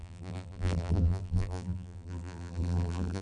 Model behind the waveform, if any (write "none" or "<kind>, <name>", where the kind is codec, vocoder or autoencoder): vocoder, BigVGAN v2